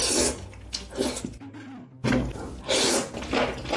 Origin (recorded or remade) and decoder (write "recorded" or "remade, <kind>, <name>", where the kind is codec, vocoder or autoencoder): recorded